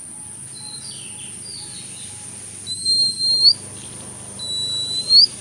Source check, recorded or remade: recorded